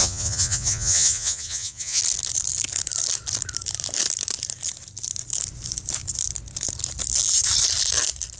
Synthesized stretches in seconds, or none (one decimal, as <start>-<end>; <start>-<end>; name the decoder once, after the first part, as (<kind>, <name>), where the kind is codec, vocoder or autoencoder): 0.0-2.0 (vocoder, Vocos)